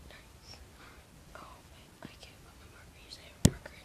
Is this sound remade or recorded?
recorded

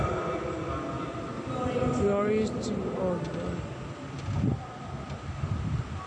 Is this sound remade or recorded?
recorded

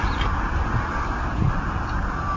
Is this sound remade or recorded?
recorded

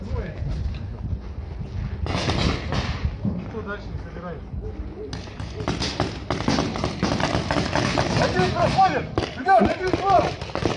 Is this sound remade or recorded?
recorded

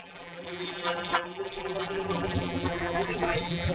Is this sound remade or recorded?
remade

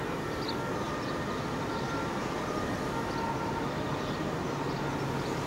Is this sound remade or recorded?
recorded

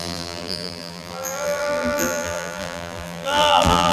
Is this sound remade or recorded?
remade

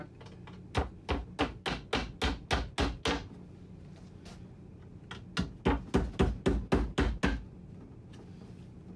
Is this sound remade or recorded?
recorded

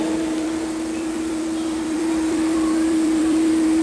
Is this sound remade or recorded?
remade